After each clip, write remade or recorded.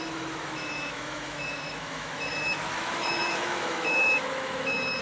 remade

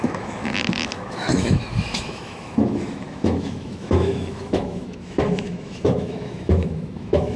remade